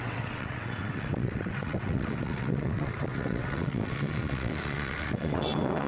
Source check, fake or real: fake